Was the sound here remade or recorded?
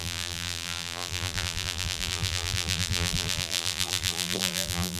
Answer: remade